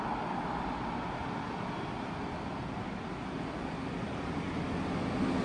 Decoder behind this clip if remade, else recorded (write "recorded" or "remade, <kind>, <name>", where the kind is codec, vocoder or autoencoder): recorded